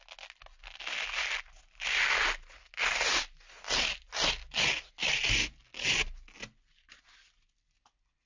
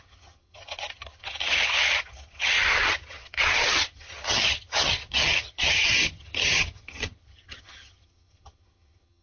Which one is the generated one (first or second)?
second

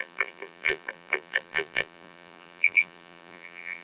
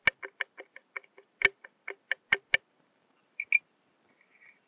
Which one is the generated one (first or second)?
first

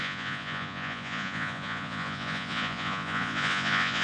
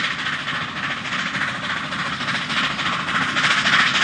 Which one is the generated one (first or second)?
first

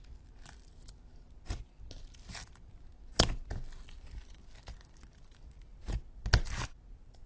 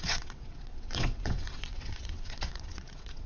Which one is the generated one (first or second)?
second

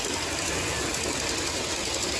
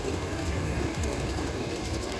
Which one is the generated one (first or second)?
second